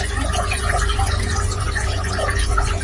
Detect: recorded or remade remade